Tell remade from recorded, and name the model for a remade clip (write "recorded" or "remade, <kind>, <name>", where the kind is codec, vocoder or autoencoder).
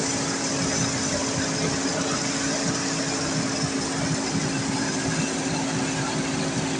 recorded